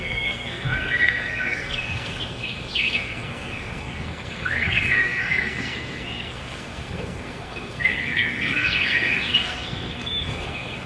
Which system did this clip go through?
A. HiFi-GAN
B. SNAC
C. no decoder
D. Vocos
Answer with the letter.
B